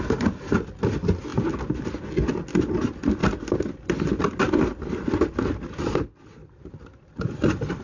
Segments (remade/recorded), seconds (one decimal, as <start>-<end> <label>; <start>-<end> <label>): 0.0-7.8 recorded